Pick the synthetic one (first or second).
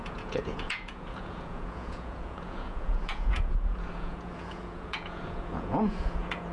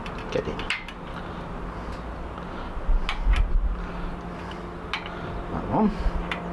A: first